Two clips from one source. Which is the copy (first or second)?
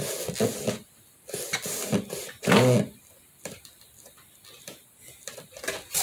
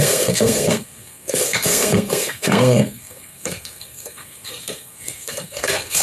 second